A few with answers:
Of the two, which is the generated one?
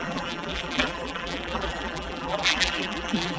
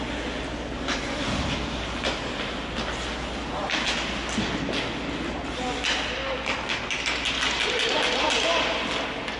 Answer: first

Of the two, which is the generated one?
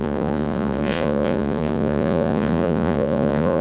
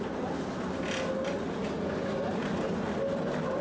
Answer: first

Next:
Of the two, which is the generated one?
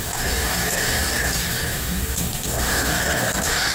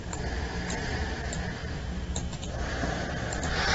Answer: first